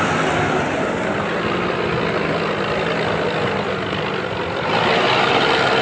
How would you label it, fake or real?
real